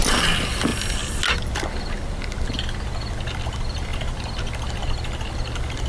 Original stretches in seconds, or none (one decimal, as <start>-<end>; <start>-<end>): 0.0-3.9; 4.8-5.9